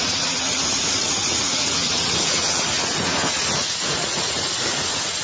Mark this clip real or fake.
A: fake